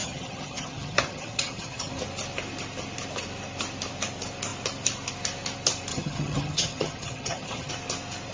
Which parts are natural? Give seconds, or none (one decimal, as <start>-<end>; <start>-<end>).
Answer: 1.9-5.9; 7.7-8.3